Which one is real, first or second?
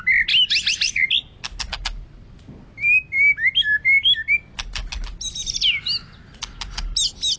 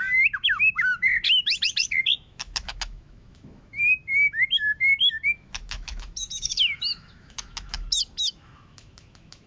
first